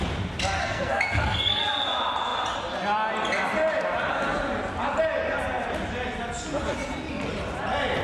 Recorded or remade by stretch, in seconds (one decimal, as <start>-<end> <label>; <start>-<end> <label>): 0.0-0.6 recorded; 0.6-1.6 remade; 1.6-8.0 recorded